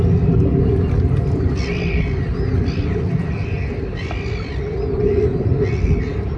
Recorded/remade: recorded